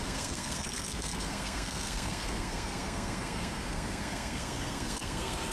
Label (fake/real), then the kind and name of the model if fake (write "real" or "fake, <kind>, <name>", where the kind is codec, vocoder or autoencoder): fake, codec, SNAC